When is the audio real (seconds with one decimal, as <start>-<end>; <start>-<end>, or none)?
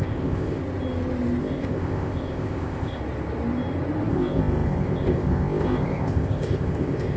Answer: 0.6-1.4; 3.0-4.1